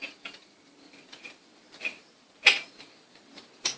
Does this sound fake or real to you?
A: fake